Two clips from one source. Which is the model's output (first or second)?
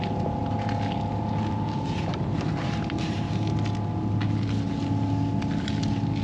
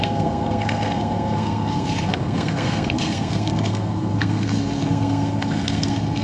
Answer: second